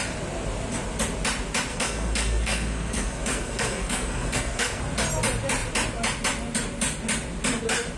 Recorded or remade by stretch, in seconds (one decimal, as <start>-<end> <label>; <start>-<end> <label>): 0.0-1.7 recorded; 1.7-4.8 remade; 4.8-8.0 recorded